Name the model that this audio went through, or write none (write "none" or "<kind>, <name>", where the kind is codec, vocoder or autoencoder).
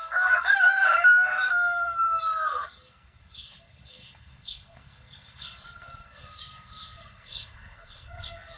codec, SNAC